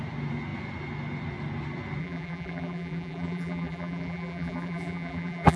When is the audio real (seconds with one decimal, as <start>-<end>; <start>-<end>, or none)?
0.0-2.0